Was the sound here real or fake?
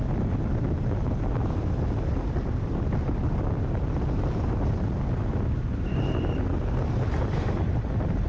real